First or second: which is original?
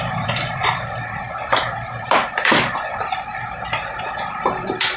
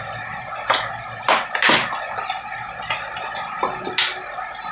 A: second